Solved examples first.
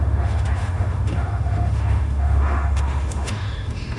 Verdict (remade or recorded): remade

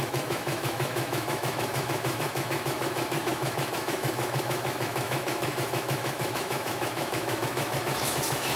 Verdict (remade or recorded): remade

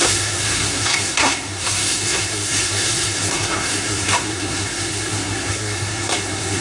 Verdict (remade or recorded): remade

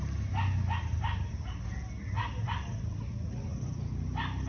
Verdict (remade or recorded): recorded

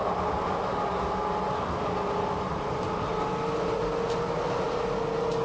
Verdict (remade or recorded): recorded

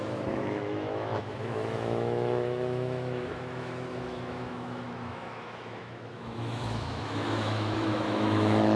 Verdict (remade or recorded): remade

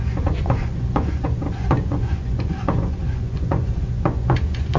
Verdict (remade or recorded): remade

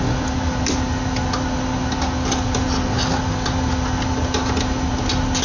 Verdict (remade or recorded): recorded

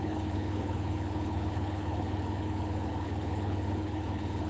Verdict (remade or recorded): remade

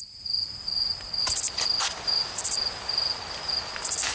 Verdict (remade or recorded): recorded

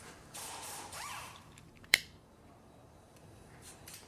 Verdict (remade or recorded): remade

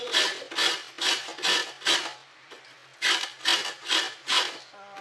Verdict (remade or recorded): recorded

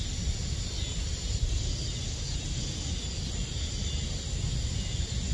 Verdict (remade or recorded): recorded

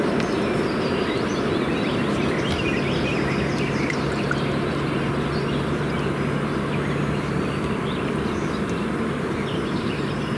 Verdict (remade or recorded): recorded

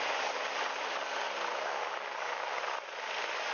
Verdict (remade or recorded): recorded